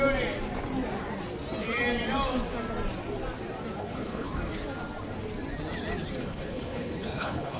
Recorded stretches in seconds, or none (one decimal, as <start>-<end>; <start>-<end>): 0.0-3.8; 4.3-6.2